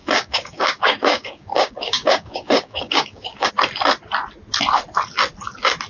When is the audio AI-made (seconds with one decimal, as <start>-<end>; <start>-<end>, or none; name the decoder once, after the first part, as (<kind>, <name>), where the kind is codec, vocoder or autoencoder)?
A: 0.0-3.5 (codec, DAC)